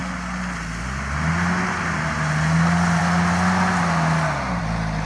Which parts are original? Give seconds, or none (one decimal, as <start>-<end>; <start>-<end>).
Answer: 0.0-5.1